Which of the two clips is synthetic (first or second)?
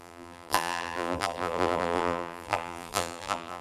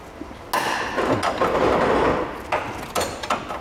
first